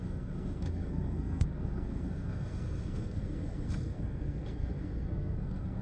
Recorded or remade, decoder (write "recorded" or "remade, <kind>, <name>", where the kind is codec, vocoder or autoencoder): remade, codec, SNAC